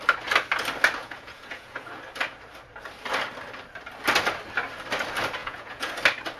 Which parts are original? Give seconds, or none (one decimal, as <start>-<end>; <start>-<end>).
0.0-1.0; 2.0-5.4; 5.9-6.4